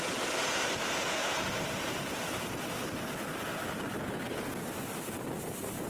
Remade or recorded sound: recorded